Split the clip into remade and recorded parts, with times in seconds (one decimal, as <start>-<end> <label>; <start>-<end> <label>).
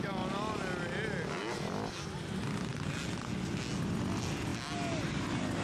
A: 0.0-5.6 recorded